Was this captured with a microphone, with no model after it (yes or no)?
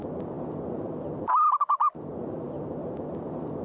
yes